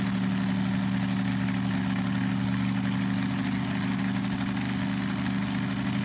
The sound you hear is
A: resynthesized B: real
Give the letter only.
B